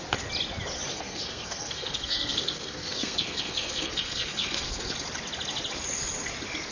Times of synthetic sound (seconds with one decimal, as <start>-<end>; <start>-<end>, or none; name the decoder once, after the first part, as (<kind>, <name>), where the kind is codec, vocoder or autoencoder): 0.9-4.9 (codec, SNAC)